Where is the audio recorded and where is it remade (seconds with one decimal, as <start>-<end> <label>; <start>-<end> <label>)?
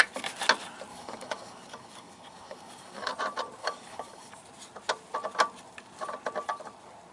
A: 0.0-0.9 recorded; 0.9-3.1 remade; 3.1-3.6 recorded; 3.6-4.3 remade; 4.3-7.1 recorded